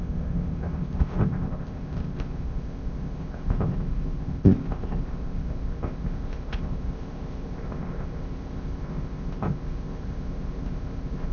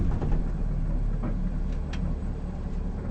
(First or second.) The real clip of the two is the second